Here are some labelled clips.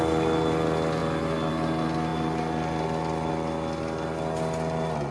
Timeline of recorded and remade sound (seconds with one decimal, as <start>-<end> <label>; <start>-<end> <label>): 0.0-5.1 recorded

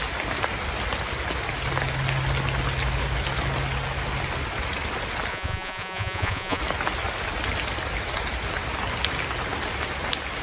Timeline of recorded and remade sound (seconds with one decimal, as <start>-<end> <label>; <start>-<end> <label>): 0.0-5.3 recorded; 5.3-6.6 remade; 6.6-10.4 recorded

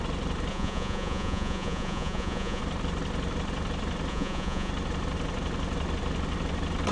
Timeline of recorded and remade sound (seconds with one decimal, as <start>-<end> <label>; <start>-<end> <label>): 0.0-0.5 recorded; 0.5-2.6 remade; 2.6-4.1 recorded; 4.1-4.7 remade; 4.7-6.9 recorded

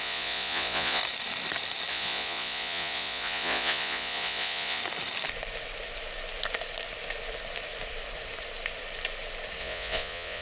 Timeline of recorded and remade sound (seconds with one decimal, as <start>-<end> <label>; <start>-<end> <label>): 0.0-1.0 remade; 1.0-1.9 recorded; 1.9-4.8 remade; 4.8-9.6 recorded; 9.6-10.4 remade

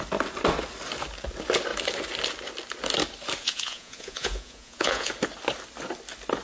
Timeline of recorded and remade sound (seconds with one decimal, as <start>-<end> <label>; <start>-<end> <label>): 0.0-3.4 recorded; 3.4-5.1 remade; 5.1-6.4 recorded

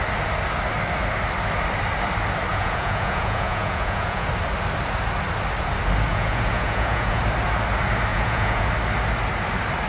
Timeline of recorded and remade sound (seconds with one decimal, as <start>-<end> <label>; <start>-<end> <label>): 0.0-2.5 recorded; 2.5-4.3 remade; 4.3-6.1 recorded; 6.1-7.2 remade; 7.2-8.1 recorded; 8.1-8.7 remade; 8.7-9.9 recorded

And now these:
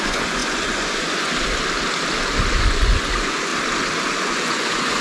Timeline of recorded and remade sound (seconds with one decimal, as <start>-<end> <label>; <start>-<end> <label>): 0.0-1.3 remade; 1.3-2.6 recorded; 2.6-3.5 remade; 3.5-4.2 recorded; 4.2-5.0 remade